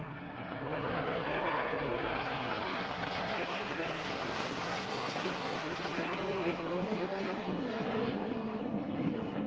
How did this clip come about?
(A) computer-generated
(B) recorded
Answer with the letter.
A